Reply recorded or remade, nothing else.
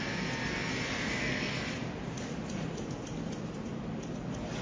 recorded